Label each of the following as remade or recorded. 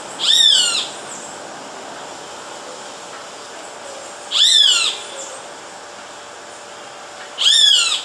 recorded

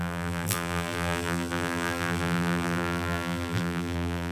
remade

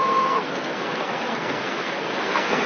remade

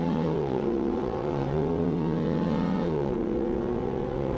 remade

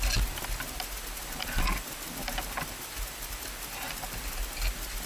recorded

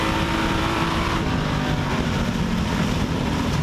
remade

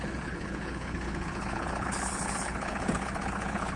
remade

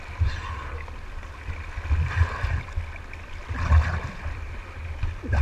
recorded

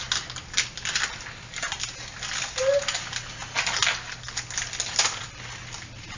recorded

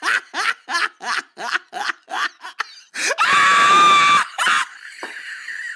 recorded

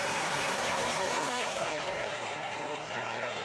remade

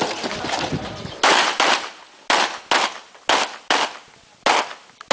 recorded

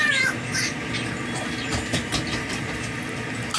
recorded